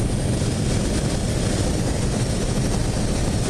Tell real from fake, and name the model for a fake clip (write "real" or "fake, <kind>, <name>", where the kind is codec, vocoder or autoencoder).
fake, vocoder, BigVGAN v2